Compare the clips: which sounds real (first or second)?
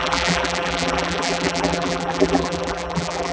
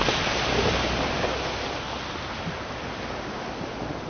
second